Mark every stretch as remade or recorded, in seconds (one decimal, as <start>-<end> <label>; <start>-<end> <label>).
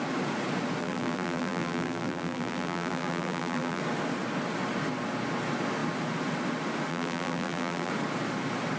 0.0-0.8 recorded; 0.8-3.8 remade; 3.8-6.9 recorded; 6.9-7.9 remade; 7.9-8.8 recorded